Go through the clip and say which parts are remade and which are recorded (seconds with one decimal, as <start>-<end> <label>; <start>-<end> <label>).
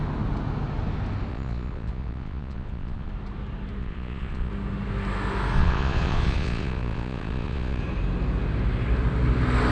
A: 0.0-1.3 recorded; 1.3-3.1 remade; 3.1-3.8 recorded; 3.8-4.5 remade; 4.5-5.6 recorded; 5.6-7.8 remade; 7.8-9.7 recorded